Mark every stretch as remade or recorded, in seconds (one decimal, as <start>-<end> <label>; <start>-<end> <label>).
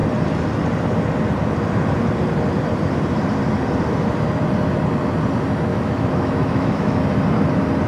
0.0-5.7 recorded; 5.7-7.0 remade; 7.0-7.9 recorded